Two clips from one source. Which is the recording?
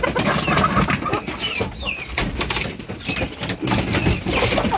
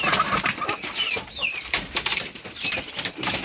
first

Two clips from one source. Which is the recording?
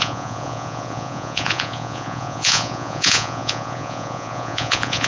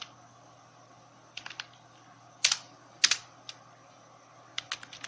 second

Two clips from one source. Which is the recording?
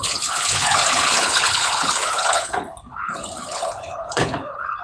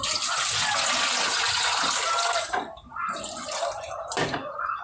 second